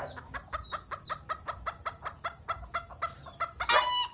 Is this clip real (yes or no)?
yes